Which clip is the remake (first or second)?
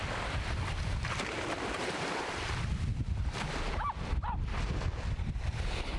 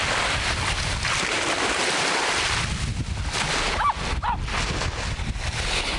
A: first